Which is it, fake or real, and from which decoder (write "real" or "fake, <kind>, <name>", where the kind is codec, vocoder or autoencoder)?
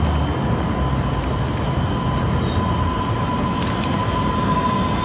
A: real